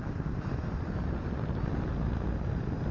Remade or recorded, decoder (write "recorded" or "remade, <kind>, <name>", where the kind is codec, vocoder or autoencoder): recorded